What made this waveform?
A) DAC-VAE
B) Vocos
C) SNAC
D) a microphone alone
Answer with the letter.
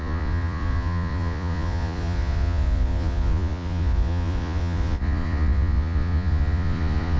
B